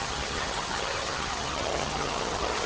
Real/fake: fake